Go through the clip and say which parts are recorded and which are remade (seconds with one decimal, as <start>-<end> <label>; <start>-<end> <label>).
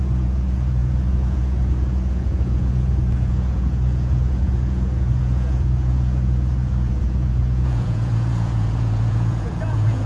0.0-10.1 remade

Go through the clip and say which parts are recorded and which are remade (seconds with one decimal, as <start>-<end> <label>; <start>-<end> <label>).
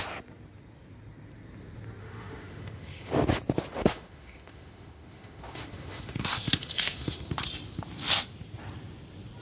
0.0-2.0 recorded; 2.0-3.1 remade; 3.1-3.8 recorded; 3.8-7.2 remade; 7.2-9.4 recorded